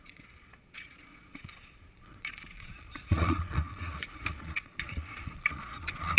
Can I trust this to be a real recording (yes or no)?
no